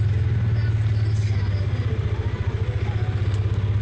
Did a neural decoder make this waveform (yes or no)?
no